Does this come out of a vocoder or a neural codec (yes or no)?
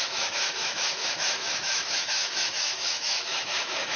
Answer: yes